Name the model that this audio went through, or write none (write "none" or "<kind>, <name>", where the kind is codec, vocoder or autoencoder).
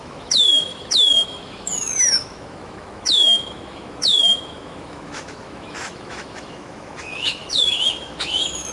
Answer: autoencoder, DAC-VAE